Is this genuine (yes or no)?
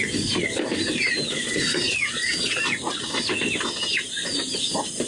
yes